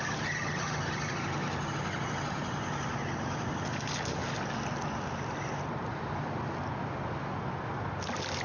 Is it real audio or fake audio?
real